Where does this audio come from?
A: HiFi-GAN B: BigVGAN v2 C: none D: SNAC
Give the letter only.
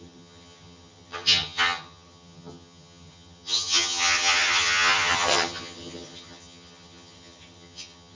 A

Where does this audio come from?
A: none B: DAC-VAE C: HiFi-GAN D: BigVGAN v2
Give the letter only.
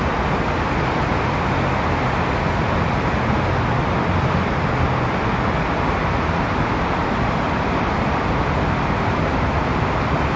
A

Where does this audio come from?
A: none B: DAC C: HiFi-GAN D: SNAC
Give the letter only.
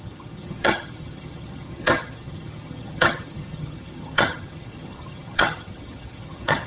C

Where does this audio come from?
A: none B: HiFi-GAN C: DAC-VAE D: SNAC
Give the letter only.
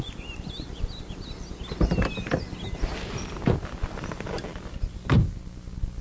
A